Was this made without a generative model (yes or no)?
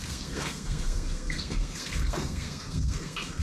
no